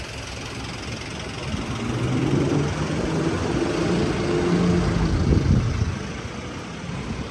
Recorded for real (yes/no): yes